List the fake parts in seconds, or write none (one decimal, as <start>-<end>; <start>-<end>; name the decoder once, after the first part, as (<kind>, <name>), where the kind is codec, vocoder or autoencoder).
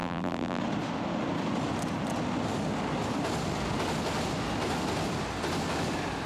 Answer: 0.0-0.6 (vocoder, BigVGAN v2)